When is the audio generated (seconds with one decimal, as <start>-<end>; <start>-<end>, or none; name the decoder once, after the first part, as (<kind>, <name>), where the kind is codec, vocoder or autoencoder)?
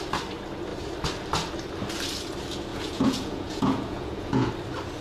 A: 2.7-4.5 (vocoder, Vocos)